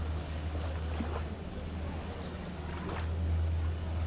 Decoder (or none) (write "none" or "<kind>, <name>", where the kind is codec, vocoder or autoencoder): none